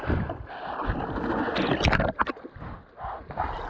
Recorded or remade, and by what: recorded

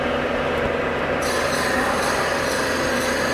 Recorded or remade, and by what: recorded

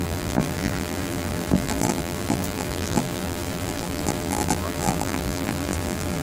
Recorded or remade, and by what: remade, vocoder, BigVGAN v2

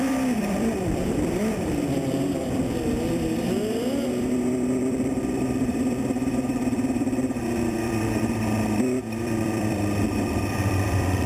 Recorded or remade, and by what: remade, vocoder, BigVGAN v2